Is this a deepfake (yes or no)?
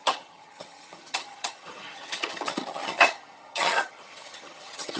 yes